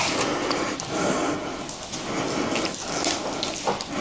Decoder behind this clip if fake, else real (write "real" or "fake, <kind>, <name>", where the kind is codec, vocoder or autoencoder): real